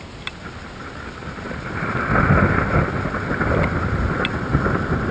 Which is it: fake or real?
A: real